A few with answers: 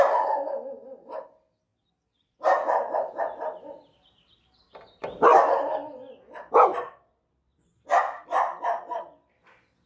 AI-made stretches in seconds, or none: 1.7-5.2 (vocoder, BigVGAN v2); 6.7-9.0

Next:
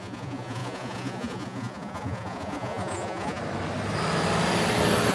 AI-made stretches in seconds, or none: 0.0-3.4 (vocoder, Vocos)

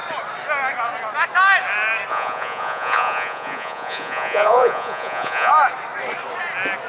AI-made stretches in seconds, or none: 2.1-5.5 (vocoder, Vocos)

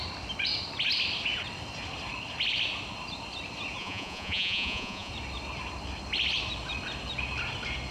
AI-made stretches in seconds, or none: 3.8-5.1 (vocoder, Vocos)

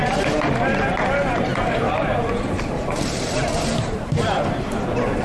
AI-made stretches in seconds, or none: 0.0-0.5 (vocoder, BigVGAN v2); 1.5-4.6